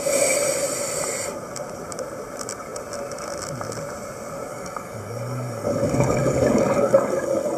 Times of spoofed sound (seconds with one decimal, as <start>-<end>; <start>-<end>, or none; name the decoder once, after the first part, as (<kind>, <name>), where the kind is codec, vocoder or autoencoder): 4.5-7.6 (codec, DAC)